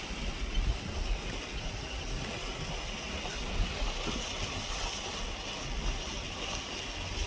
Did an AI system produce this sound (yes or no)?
no